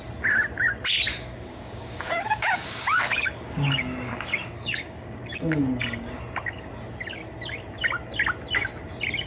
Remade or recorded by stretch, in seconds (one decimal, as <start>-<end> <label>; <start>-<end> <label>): 0.0-1.1 recorded; 1.1-6.2 remade; 6.2-9.3 recorded